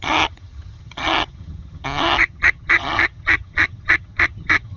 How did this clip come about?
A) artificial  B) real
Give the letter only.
A